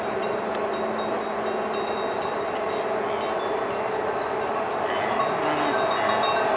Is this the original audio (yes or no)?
yes